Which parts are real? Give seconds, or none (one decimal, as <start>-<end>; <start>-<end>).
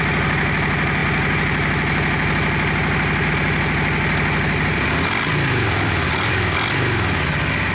0.0-7.7